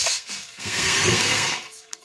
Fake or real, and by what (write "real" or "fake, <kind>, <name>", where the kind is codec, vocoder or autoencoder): fake, codec, SNAC